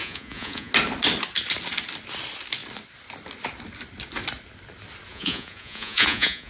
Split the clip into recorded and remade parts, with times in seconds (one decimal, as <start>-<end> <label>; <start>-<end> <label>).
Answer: 0.0-0.7 remade; 0.7-5.1 recorded; 5.1-6.5 remade

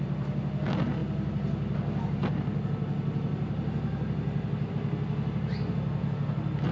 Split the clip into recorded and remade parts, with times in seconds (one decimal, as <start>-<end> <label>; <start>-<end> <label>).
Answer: 0.0-6.7 recorded